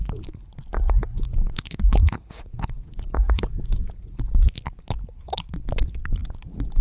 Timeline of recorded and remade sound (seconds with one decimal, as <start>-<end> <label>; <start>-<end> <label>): 0.0-0.7 recorded; 0.7-4.2 remade; 4.2-6.8 recorded